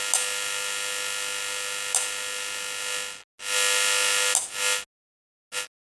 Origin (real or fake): real